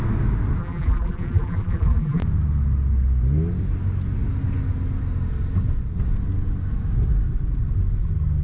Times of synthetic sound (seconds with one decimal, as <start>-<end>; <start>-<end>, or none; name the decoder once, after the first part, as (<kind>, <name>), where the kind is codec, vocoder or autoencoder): 0.6-2.2 (vocoder, BigVGAN v2)

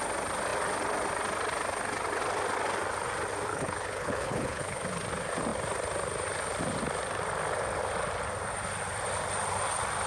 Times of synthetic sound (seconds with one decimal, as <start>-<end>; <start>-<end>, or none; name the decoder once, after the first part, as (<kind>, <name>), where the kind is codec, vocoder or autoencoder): 3.5-4.8 (codec, HILCodec)

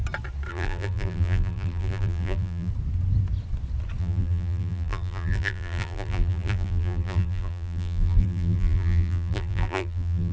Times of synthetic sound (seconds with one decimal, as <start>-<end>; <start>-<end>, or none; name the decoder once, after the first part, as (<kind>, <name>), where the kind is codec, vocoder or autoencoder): 0.5-2.7 (vocoder, BigVGAN v2); 4.0-10.3

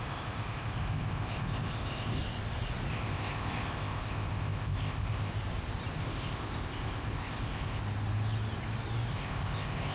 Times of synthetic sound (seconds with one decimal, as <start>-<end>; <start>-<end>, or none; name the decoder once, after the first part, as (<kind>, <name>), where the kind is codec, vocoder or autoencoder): 0.0-2.2 (codec, ZipCodec); 2.9-5.3; 6.0-7.8; 9.1-9.9

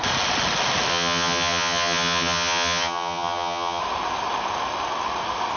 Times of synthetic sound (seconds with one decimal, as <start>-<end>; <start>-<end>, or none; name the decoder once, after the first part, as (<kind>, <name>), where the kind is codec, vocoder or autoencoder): 0.9-3.8 (vocoder, HiFi-GAN)

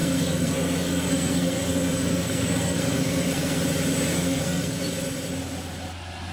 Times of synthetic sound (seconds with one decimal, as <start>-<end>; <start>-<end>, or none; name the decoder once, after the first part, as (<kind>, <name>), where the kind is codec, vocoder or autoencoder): 0.0-3.6 (codec, SNAC); 4.1-4.8